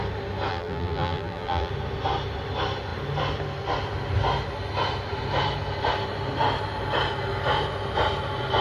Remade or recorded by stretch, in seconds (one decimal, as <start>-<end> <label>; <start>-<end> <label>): 0.0-0.5 recorded; 0.5-1.7 remade; 1.7-8.6 recorded